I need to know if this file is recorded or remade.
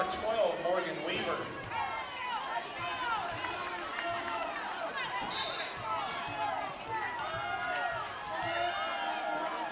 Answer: recorded